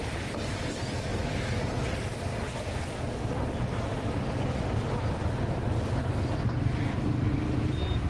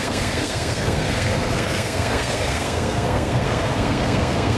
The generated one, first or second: second